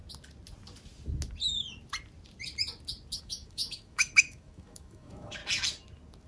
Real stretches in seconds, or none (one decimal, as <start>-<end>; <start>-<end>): 0.0-3.2; 5.4-6.3